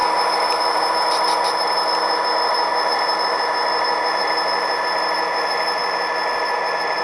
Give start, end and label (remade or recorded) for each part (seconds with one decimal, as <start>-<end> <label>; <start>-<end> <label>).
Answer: 0.0-2.7 remade; 2.7-3.3 recorded; 3.3-5.8 remade; 5.8-6.6 recorded; 6.6-7.0 remade